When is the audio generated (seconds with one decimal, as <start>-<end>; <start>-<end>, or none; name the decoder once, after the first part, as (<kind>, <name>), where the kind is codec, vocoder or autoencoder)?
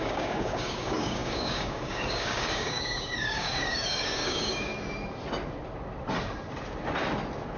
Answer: 0.0-4.7 (codec, DAC)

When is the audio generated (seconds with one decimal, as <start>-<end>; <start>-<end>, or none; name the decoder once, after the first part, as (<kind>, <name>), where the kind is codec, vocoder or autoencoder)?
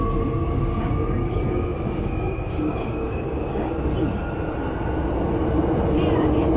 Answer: 0.4-3.7 (codec, DAC)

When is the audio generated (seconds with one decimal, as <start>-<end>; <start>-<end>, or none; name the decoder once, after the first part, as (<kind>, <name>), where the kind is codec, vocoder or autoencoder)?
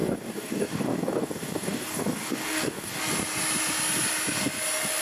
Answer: 0.0-3.0 (codec, DAC)